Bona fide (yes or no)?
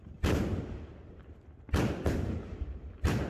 no